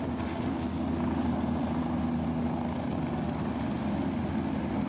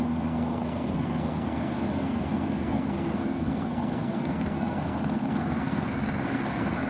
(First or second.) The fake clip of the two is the second